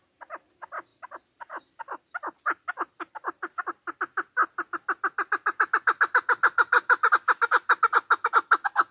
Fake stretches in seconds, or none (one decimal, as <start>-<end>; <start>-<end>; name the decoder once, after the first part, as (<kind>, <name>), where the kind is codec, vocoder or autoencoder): 0.9-3.4 (vocoder, BigVGAN v2)